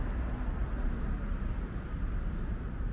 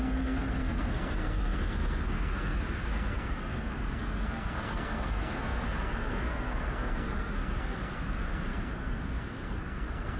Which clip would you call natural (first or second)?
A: first